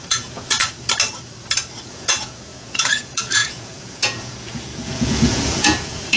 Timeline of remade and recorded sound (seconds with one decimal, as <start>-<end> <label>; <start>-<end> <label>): 0.0-0.6 remade; 0.6-1.9 recorded; 1.9-6.2 remade